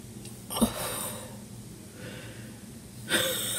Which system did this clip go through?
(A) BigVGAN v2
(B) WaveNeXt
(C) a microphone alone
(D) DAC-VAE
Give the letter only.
C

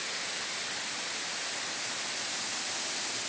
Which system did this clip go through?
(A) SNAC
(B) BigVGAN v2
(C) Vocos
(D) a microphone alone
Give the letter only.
D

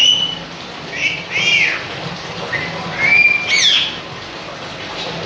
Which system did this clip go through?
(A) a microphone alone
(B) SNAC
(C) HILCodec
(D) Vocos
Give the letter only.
A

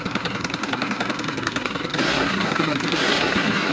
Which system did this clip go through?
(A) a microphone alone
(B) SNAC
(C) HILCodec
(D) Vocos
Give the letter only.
B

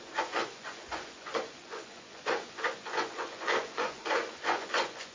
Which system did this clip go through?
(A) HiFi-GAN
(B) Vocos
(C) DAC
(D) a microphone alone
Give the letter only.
B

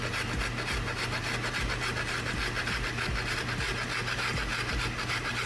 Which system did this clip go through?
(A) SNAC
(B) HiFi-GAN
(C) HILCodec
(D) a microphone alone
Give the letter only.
D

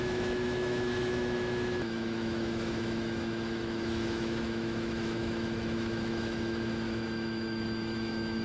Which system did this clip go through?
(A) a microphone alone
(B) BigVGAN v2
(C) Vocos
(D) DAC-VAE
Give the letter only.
D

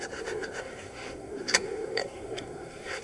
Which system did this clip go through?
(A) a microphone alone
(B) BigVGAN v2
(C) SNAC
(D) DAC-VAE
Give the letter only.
C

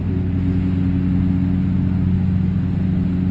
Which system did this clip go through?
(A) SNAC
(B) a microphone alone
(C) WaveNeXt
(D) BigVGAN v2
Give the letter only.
B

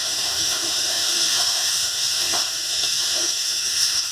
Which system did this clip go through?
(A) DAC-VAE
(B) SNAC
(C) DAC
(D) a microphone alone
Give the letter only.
A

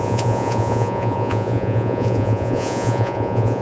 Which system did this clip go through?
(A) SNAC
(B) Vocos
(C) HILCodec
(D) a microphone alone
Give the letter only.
B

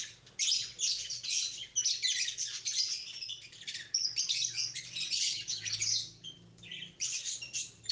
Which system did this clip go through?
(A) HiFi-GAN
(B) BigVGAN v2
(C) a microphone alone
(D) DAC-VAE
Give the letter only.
C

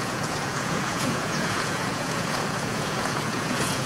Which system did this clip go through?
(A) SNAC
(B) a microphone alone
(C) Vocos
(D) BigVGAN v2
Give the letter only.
C